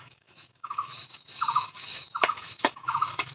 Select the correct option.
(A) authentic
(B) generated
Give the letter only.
B